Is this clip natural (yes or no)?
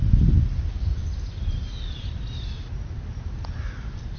yes